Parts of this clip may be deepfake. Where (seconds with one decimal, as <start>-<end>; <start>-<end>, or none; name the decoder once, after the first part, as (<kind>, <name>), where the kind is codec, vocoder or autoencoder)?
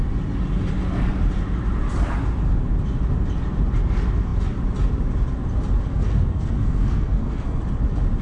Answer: 5.9-7.6 (codec, SNAC)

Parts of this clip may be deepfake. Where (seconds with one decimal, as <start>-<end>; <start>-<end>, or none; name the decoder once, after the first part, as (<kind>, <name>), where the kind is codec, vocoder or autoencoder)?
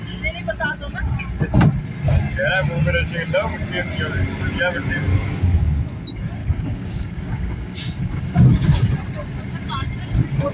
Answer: 5.1-5.6 (codec, DAC); 6.4-8.9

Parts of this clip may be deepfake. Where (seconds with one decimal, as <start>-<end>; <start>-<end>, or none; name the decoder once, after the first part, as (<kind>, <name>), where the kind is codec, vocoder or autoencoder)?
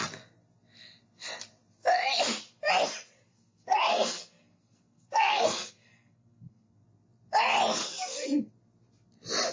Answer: 3.3-6.7 (codec, SNAC); 7.8-8.5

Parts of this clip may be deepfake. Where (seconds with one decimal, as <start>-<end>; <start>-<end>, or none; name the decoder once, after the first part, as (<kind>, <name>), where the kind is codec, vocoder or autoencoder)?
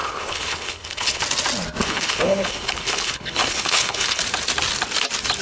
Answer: 0.0-1.2 (codec, HILCodec); 1.8-4.2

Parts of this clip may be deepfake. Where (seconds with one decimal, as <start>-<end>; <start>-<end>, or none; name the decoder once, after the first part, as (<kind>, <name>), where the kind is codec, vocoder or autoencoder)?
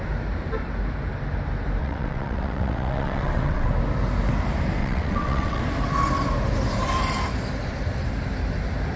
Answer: 1.8-3.7 (vocoder, WaveNeXt); 4.8-5.6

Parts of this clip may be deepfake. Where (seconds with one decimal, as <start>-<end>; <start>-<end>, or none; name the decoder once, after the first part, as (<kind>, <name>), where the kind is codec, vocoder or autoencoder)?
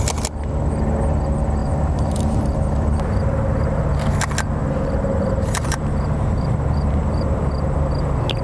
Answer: 1.6-3.8 (vocoder, BigVGAN v2); 4.6-7.4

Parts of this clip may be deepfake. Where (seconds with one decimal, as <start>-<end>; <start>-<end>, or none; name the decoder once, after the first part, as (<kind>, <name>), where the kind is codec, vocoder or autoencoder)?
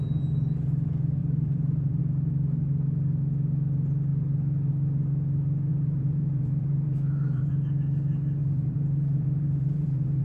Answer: 1.2-2.0 (vocoder, BigVGAN v2); 5.7-7.5; 8.4-10.2